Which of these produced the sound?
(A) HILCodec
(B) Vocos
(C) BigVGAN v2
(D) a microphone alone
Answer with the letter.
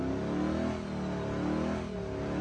D